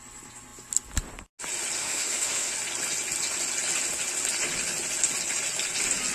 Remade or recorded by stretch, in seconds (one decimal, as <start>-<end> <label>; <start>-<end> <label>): 0.0-1.8 recorded; 1.8-2.5 remade; 2.5-6.1 recorded